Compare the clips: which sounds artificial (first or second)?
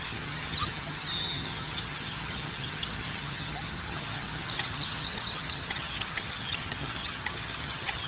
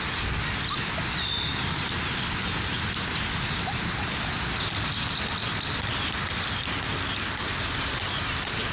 first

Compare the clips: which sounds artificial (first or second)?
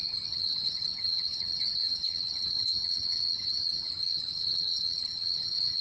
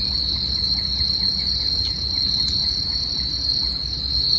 first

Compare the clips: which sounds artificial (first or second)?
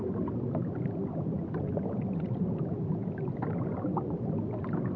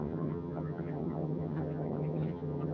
second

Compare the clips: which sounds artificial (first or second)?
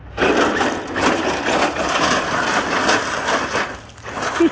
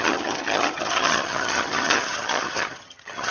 second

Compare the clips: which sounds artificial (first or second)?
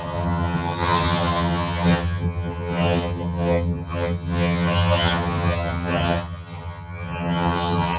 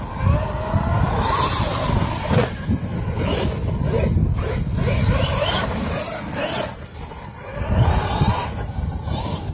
first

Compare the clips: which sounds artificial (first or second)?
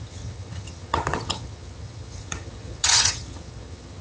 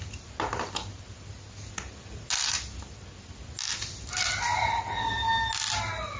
first